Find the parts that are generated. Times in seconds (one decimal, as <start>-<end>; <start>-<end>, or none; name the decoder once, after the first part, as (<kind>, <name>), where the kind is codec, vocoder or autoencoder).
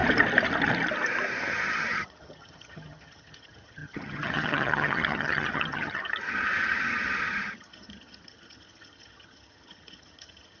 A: 1.4-10.6 (vocoder, HiFi-GAN)